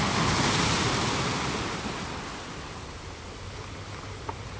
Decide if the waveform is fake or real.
real